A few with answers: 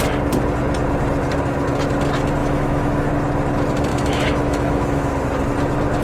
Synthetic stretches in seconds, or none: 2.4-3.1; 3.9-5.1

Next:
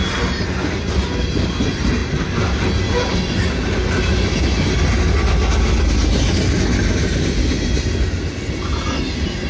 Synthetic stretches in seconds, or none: none

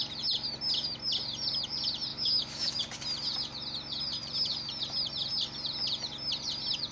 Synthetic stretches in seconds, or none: 2.1-2.8

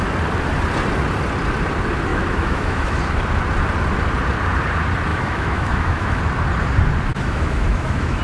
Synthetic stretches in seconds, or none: 2.1-3.0; 5.1-6.2; 7.1-8.2

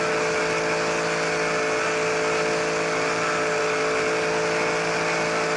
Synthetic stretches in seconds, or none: none

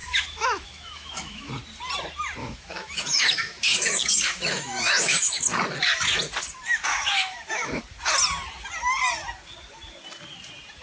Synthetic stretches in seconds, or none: 0.0-1.5; 2.4-5.4; 6.9-7.8